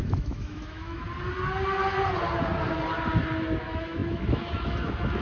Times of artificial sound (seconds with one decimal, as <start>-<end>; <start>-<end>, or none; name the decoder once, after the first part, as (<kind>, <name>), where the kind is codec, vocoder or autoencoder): 0.0-1.0 (autoencoder, DAC-VAE); 3.6-5.2